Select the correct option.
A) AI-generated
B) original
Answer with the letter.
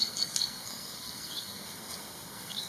A